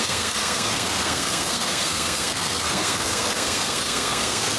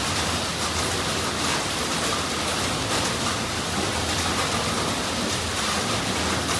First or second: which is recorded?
second